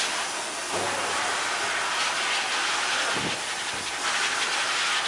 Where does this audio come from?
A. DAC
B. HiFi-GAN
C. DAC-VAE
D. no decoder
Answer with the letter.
D